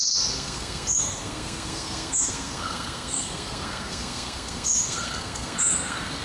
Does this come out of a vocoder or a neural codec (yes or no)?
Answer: yes